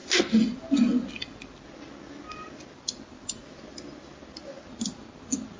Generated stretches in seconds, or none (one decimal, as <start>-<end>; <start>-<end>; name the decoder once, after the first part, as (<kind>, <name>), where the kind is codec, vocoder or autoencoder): none